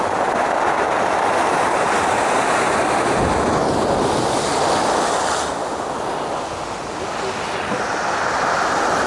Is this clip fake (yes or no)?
no